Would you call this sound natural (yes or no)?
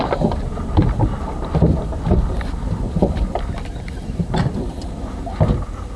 yes